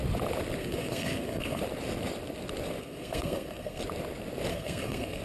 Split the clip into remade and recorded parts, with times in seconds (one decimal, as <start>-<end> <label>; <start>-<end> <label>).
0.0-0.6 recorded; 0.6-1.6 remade; 1.6-2.8 recorded; 2.8-3.8 remade; 3.8-4.5 recorded; 4.5-5.2 remade